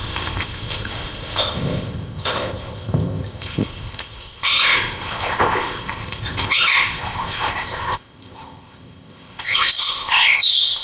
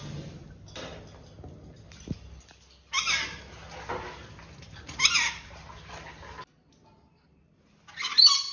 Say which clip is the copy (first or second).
first